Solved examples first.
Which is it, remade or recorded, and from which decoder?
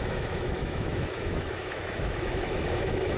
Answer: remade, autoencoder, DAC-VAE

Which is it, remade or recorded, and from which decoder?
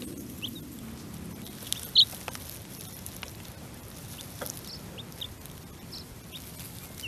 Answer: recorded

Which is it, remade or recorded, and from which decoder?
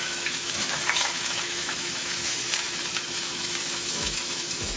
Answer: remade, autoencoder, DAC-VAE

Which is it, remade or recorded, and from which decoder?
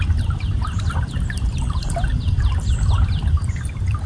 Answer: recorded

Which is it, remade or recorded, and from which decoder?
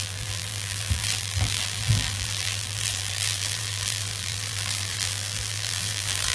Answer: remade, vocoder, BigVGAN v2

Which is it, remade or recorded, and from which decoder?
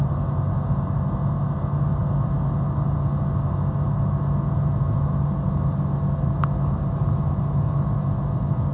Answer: recorded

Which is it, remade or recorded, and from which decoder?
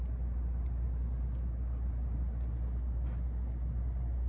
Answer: recorded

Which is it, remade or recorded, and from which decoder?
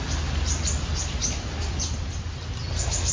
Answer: recorded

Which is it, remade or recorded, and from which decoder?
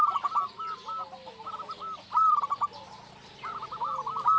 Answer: recorded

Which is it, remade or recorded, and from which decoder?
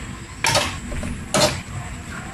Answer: recorded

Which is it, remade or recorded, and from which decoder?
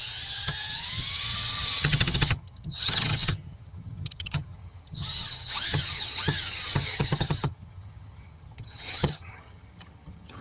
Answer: remade, vocoder, HiFi-GAN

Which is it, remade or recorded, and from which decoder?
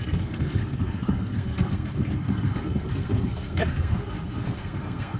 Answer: remade, codec, SNAC